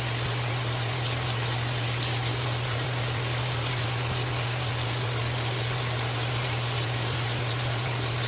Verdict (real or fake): real